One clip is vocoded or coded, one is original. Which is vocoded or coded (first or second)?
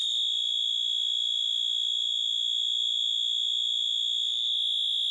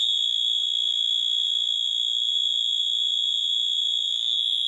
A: second